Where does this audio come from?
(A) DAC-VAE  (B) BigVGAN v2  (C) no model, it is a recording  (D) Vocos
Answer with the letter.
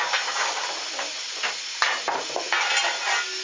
C